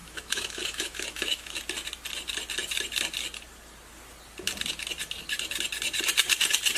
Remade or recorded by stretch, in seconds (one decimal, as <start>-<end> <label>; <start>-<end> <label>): 0.0-1.6 remade; 1.6-6.8 recorded